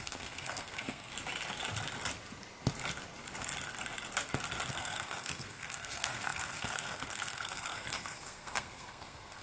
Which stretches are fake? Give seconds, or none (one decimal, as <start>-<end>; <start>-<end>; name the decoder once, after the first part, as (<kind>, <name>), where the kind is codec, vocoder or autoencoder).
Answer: 0.0-1.1 (codec, SNAC); 4.7-9.4